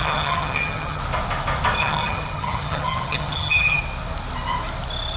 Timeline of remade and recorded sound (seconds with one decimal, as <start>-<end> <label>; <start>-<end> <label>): 0.0-1.0 remade; 1.0-1.8 recorded; 1.8-3.8 remade; 3.8-5.2 recorded